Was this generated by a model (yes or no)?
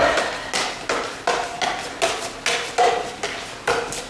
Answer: no